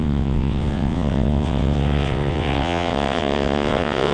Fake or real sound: fake